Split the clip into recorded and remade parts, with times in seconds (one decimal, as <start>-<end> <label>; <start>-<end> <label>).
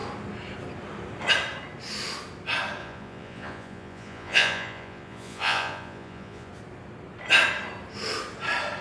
0.0-2.8 recorded; 2.8-6.5 remade; 6.5-8.8 recorded